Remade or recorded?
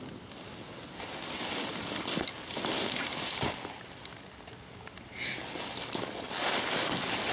recorded